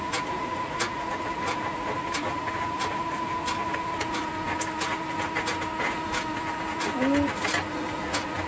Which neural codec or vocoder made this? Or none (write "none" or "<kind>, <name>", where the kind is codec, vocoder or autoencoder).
none